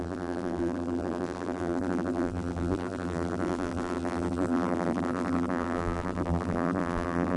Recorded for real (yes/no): no